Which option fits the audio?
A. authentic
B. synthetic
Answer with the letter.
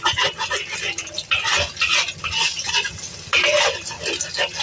A